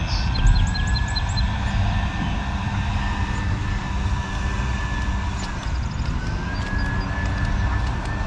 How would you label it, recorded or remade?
recorded